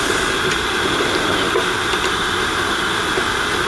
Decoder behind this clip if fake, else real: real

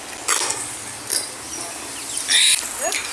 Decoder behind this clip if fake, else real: real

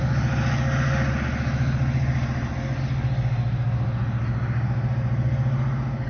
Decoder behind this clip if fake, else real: real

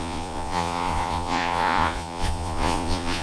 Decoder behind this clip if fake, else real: fake, vocoder, Vocos